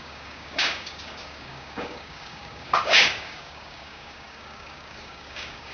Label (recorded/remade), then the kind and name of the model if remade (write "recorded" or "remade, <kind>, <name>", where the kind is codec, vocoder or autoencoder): remade, codec, DAC